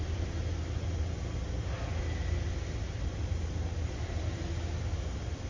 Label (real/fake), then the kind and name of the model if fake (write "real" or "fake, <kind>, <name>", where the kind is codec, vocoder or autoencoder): real